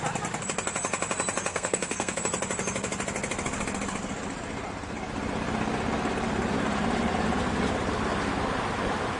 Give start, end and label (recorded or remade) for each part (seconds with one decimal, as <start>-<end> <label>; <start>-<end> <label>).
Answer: 0.0-1.5 recorded; 1.5-2.2 remade; 2.2-9.2 recorded